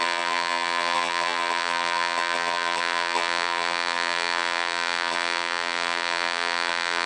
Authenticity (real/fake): fake